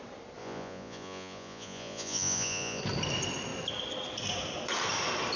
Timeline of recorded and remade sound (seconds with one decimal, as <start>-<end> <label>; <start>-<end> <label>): 0.0-0.4 recorded; 0.4-2.8 remade; 2.8-5.4 recorded